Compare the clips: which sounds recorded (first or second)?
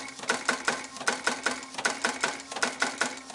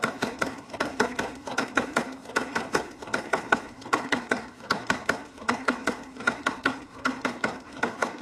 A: first